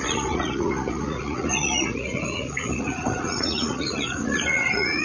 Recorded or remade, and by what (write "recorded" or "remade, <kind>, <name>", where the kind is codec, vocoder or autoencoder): remade, vocoder, Vocos